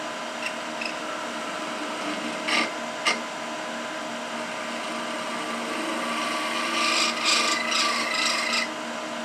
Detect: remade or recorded recorded